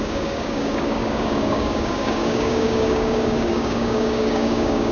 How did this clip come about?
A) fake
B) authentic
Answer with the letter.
A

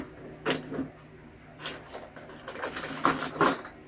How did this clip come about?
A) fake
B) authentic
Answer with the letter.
B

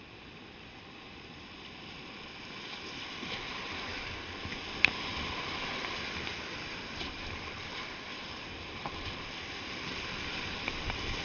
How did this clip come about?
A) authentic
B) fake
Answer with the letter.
B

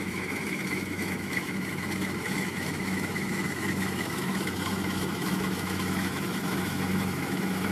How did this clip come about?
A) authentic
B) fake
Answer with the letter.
B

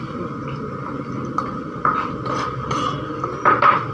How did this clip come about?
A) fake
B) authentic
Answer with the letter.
B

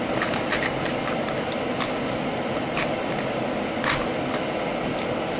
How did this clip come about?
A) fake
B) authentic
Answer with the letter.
B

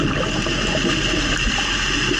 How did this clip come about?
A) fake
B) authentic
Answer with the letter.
B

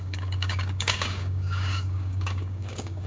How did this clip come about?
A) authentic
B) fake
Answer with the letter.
B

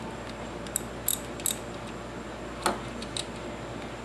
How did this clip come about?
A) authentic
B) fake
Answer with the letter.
A